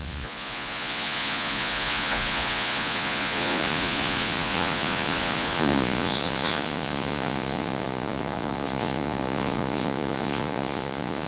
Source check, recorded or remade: remade